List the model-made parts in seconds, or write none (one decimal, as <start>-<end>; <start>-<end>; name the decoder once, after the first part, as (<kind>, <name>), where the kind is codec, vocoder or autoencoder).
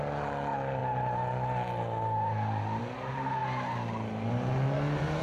none